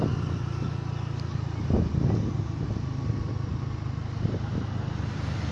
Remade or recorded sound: recorded